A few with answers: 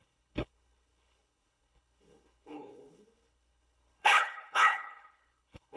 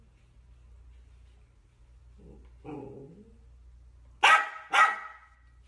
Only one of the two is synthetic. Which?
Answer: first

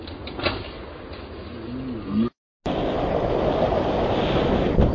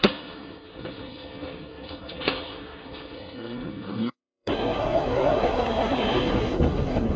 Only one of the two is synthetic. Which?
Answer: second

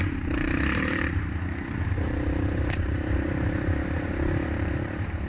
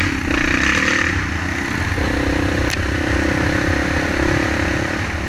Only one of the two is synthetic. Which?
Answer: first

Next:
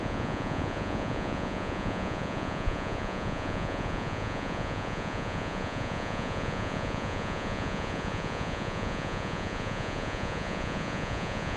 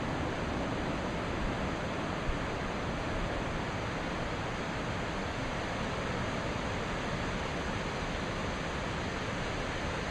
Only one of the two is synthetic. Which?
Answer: first